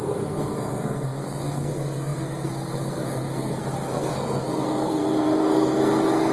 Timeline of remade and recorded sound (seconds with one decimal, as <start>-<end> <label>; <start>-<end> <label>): 0.0-6.3 remade